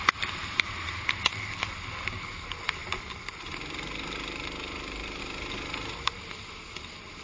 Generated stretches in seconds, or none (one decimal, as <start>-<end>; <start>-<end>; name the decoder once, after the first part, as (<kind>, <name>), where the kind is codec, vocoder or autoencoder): 0.4-1.1 (vocoder, BigVGAN v2)